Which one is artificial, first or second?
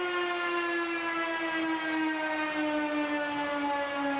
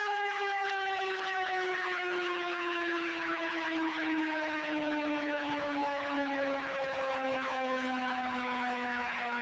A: second